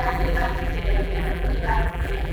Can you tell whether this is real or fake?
fake